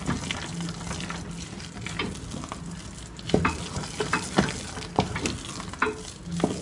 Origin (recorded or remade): recorded